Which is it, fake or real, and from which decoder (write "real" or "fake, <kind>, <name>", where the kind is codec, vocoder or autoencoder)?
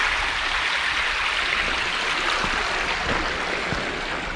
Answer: real